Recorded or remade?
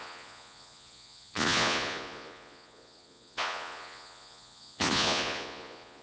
remade